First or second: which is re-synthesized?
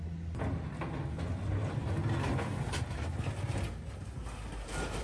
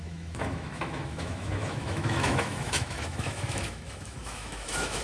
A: second